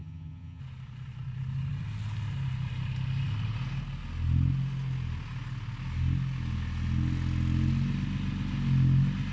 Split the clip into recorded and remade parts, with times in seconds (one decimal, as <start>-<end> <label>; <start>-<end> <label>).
0.0-0.6 remade; 0.6-9.3 recorded

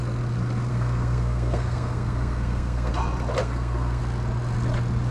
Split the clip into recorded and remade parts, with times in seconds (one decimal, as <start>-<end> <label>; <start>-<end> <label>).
0.0-0.7 recorded; 0.7-2.9 remade; 2.9-3.4 recorded; 3.4-4.0 remade; 4.0-5.1 recorded

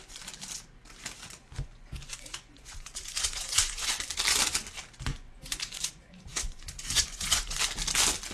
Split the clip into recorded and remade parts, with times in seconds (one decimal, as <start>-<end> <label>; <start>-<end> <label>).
0.0-1.4 recorded; 1.4-3.9 remade; 3.9-5.1 recorded; 5.1-7.6 remade; 7.6-8.3 recorded

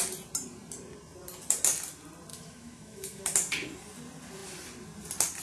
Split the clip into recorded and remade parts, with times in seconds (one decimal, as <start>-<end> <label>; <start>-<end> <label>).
0.0-2.3 recorded; 2.3-3.2 remade; 3.2-5.4 recorded

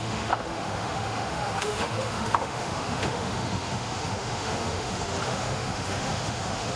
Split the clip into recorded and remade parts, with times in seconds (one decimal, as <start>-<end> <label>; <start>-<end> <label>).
0.0-6.8 remade

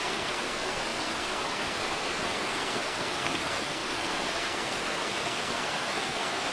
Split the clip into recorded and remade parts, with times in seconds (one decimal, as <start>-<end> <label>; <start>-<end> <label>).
0.0-6.5 remade

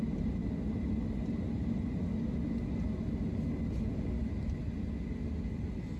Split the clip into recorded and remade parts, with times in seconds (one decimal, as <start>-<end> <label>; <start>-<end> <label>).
0.0-6.0 recorded

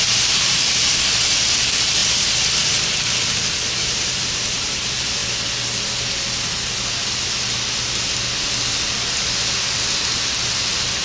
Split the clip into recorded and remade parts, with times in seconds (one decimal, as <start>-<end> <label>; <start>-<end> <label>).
0.0-2.0 remade; 2.0-2.7 recorded; 2.7-5.2 remade; 5.2-9.6 recorded; 9.6-11.0 remade